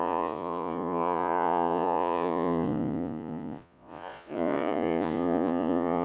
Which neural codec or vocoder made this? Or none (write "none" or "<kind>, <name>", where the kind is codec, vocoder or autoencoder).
vocoder, Vocos